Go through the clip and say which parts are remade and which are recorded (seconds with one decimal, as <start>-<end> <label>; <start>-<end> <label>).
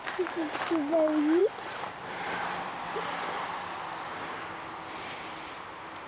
0.0-6.1 recorded